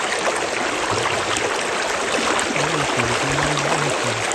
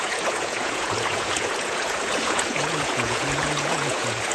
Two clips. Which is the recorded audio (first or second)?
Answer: first